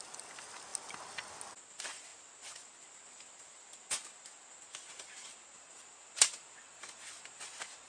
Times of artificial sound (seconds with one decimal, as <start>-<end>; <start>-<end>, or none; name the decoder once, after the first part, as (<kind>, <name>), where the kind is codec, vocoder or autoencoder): none